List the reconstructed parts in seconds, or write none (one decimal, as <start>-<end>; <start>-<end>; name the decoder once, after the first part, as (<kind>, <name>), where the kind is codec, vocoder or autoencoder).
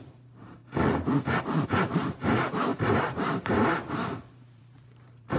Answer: 0.0-0.6 (vocoder, BigVGAN v2); 1.4-5.4